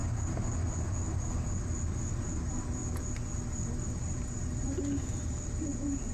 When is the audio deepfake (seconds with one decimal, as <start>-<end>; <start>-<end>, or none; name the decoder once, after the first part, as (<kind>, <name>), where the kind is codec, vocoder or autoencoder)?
2.4-2.8 (vocoder, BigVGAN v2); 3.9-6.1